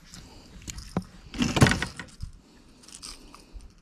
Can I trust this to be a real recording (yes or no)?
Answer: yes